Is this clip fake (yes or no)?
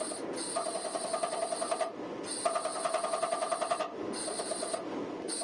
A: no